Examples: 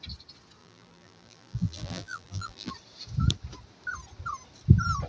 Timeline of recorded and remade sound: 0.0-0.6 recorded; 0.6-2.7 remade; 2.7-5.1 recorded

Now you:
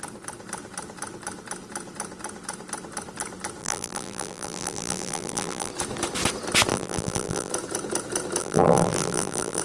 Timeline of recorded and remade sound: 0.0-3.6 recorded; 3.6-5.7 remade; 5.7-6.7 recorded; 6.7-7.5 remade; 7.5-8.4 recorded; 8.4-9.6 remade

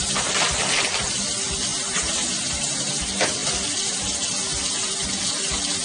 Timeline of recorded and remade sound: 0.0-1.7 recorded; 1.7-2.9 remade; 2.9-5.8 recorded

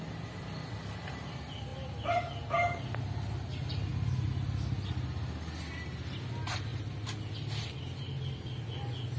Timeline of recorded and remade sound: 0.0-9.2 recorded

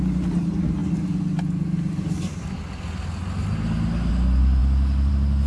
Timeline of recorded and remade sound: 0.0-5.5 recorded